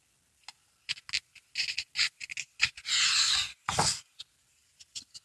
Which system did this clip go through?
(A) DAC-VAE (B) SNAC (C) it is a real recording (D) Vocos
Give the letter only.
C